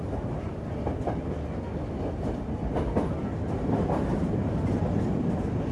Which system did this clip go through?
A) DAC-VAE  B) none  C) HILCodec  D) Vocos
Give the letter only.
B